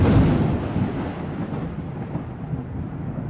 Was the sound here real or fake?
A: real